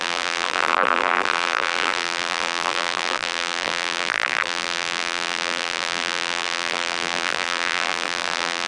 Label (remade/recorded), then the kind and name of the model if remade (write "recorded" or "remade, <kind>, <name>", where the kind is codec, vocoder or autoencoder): remade, vocoder, BigVGAN v2